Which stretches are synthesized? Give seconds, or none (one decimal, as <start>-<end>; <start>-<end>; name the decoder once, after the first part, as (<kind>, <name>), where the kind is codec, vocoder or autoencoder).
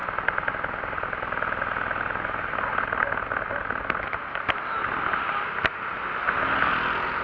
none